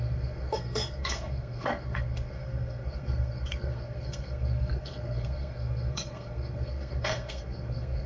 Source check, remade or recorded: remade